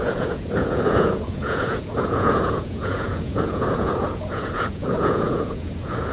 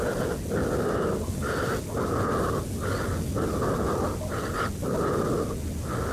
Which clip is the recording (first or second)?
second